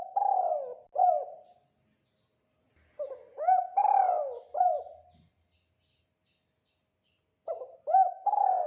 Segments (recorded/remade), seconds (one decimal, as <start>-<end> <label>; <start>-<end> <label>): 0.0-8.7 recorded